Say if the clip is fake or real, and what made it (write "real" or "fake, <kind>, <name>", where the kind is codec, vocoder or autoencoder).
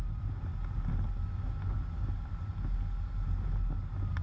real